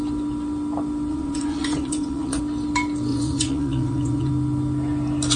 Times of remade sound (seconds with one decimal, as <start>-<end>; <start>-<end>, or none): 1.1-2.4; 3.1-4.3